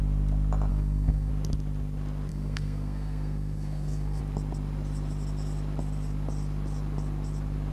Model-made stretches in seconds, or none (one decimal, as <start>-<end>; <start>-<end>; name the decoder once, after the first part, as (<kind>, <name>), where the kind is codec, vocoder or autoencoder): 0.7-1.3 (codec, SNAC); 2.3-4.2